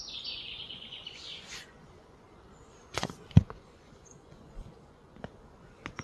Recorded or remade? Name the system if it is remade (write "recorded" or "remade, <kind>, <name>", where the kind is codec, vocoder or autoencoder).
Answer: remade, vocoder, Vocos